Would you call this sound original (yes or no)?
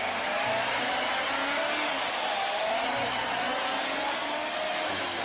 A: yes